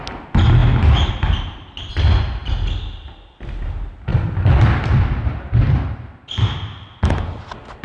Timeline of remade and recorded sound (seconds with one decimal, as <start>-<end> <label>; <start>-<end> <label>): 0.0-7.8 recorded